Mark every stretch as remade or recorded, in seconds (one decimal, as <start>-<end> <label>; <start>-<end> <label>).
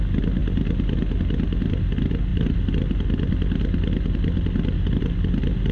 0.0-5.7 recorded